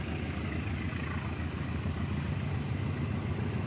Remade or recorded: recorded